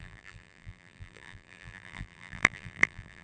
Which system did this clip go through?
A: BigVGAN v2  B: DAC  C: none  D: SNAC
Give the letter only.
A